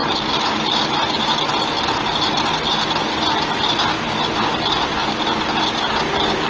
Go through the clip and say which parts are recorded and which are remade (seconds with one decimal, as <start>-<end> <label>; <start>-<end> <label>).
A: 0.0-6.5 recorded